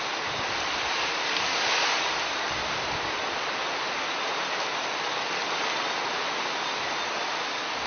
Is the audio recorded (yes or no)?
yes